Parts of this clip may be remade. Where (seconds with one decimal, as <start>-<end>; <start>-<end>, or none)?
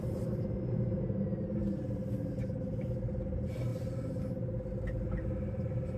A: 3.7-4.2